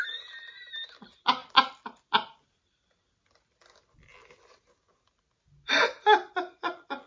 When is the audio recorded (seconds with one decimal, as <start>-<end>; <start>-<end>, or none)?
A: 0.0-7.1